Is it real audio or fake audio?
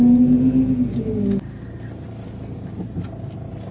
real